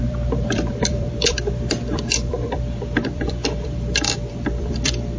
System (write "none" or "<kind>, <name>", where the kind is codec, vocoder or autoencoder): vocoder, BigVGAN v2